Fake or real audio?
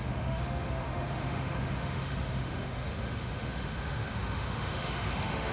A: fake